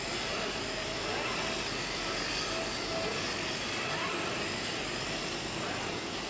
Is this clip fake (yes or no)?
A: no